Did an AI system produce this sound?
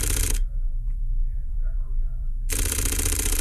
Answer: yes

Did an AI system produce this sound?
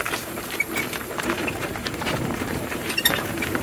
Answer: yes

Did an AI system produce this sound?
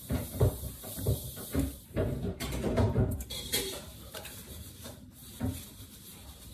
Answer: yes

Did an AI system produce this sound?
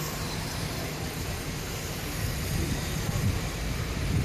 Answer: yes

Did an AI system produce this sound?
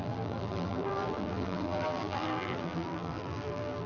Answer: yes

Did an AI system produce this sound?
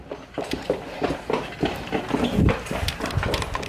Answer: no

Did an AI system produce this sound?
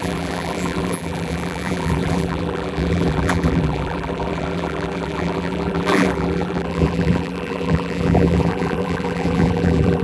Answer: yes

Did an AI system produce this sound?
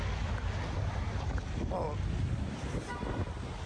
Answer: no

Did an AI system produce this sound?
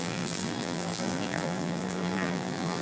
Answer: yes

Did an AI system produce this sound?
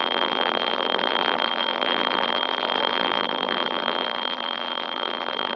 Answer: yes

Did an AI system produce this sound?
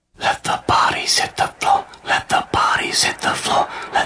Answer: no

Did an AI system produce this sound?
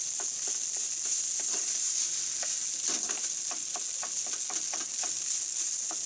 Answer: no